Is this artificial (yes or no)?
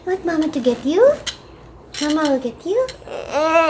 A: no